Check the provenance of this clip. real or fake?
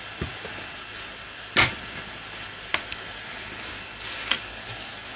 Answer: real